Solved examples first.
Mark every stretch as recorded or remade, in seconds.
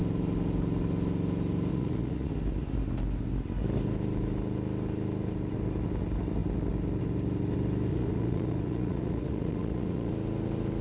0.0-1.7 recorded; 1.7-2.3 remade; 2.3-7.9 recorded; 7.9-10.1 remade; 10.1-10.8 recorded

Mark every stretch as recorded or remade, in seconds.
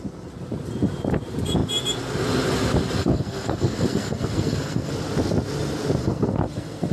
0.0-3.0 recorded; 3.0-4.9 remade; 4.9-6.0 recorded; 6.0-6.9 remade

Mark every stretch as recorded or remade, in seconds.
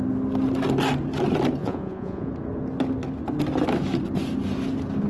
0.0-1.6 recorded; 1.6-2.3 remade; 2.3-5.1 recorded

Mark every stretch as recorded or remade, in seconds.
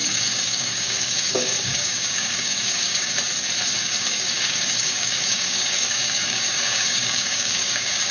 0.0-3.1 remade; 3.1-3.7 recorded; 3.7-8.1 remade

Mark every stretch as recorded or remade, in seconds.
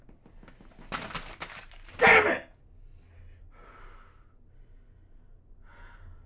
0.0-2.1 recorded; 2.1-2.6 remade; 2.6-6.3 recorded